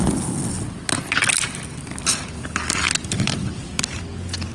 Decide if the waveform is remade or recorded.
recorded